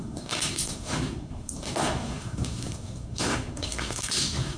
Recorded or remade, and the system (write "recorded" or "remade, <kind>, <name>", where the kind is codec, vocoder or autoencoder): remade, codec, SNAC